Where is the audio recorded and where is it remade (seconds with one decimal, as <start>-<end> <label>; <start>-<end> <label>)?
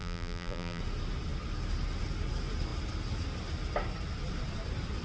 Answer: 0.0-0.8 remade; 0.8-5.0 recorded